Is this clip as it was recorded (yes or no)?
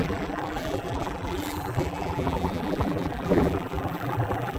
no